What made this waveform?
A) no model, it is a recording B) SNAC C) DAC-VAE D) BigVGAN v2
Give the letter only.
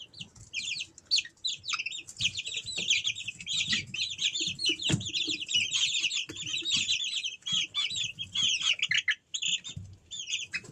A